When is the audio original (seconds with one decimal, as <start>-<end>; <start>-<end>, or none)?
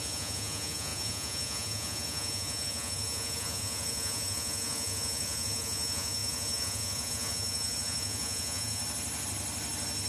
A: 8.8-10.1